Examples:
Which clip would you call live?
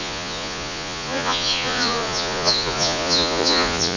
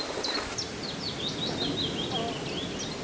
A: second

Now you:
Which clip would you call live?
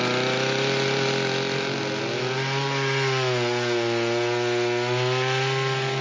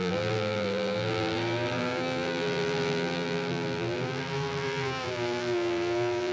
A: first